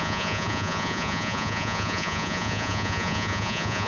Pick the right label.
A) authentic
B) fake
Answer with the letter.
B